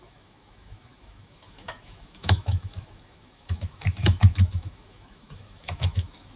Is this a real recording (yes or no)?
no